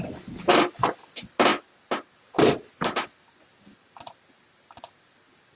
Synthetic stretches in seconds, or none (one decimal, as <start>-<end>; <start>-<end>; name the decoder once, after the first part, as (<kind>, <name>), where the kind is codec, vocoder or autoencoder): none